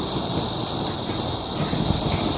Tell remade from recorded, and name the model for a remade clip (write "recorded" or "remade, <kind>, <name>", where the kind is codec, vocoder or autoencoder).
recorded